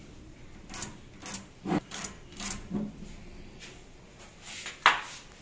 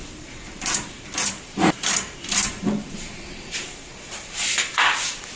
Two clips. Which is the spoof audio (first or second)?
second